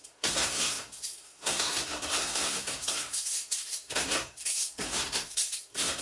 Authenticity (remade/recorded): remade